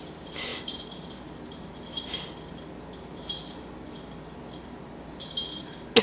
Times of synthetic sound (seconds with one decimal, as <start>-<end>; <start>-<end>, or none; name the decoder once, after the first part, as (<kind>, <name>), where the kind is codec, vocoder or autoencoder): none